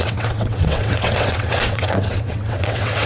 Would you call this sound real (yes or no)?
no